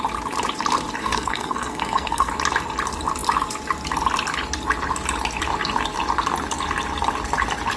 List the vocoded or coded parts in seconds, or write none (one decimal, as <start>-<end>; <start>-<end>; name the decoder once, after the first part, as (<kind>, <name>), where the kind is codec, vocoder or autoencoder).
1.0-2.3 (codec, SNAC)